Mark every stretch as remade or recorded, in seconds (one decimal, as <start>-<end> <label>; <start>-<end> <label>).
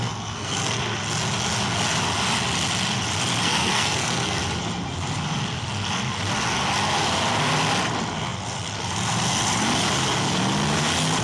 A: 0.0-0.8 remade; 0.8-3.4 recorded; 3.4-4.4 remade; 4.4-11.2 recorded